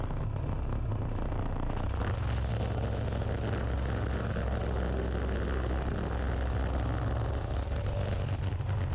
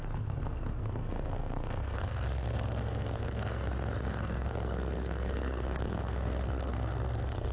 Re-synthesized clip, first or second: second